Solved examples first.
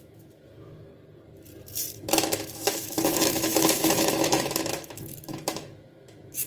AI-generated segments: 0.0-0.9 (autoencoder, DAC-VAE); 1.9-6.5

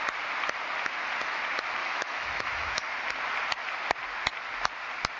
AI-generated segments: 1.8-2.9 (autoencoder, DAC-VAE)

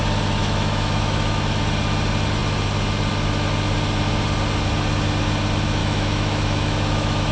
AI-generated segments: 0.4-1.6 (autoencoder, DAC-VAE); 5.8-7.3